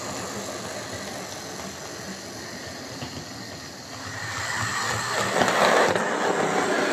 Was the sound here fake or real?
real